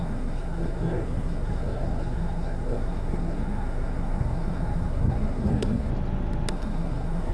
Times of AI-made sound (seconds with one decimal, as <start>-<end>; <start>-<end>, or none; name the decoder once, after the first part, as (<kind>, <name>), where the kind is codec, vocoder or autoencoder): 0.0-5.9 (codec, SNAC); 6.5-7.3